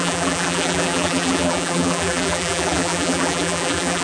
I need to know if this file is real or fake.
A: fake